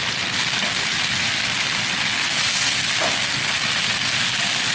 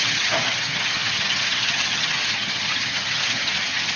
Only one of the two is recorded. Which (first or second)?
first